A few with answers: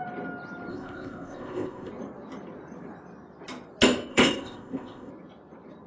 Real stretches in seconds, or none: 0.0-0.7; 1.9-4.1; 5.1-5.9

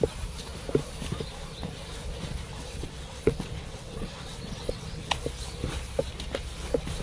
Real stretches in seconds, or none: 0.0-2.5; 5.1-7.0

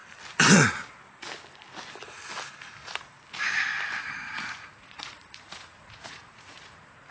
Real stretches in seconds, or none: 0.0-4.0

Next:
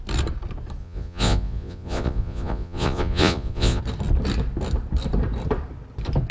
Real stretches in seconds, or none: 0.0-0.8; 3.8-6.3

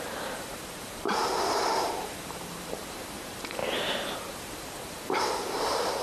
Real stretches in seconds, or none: none

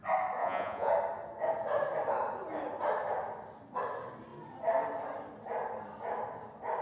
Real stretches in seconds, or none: 0.0-0.4; 0.9-6.8